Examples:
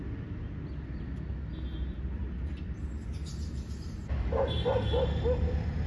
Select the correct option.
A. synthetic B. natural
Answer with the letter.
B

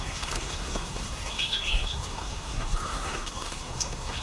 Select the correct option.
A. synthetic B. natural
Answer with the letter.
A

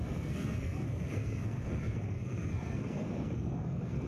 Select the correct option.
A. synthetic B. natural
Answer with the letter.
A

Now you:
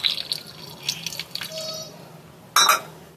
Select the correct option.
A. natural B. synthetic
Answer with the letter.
A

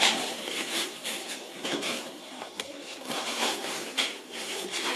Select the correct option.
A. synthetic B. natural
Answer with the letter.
A